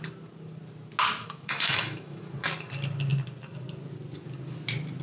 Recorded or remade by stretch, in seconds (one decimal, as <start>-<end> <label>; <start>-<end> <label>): 0.0-1.2 recorded; 1.2-2.2 remade; 2.2-5.0 recorded